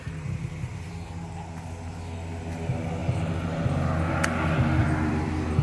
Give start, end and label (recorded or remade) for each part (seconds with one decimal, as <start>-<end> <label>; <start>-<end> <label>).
0.0-4.8 recorded; 4.8-5.6 remade